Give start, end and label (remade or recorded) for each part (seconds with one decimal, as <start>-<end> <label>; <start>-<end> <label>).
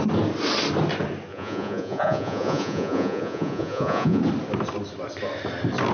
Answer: 0.0-1.3 recorded; 1.3-4.2 remade; 4.2-5.9 recorded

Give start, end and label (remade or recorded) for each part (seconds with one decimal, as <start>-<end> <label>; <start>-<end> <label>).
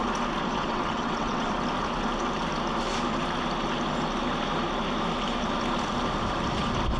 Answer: 0.0-0.4 recorded; 0.4-1.5 remade; 1.5-7.0 recorded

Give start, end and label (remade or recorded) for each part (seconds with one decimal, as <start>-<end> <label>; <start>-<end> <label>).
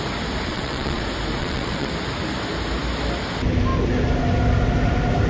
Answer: 0.0-0.5 recorded; 0.5-1.0 remade; 1.0-1.4 recorded; 1.4-1.9 remade; 1.9-5.3 recorded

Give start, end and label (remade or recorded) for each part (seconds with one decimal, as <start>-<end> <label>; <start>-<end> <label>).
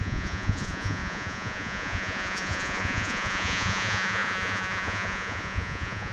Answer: 0.0-6.1 remade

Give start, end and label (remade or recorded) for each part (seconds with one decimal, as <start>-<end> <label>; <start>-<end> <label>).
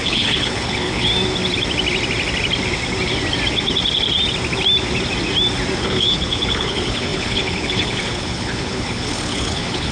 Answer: 0.0-1.1 remade; 1.1-5.8 recorded; 5.8-9.9 remade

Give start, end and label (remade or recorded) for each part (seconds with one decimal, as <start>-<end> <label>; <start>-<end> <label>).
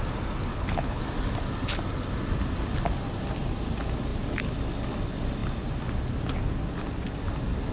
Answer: 0.0-0.5 recorded; 0.5-1.0 remade; 1.0-7.7 recorded